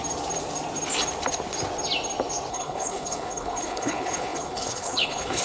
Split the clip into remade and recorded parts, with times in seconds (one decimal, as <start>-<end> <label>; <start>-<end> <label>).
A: 0.0-2.5 recorded; 2.5-5.4 remade